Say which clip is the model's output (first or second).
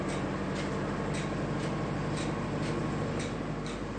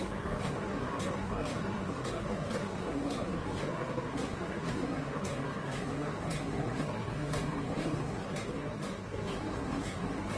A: second